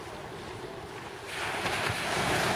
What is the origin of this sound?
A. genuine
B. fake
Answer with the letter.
A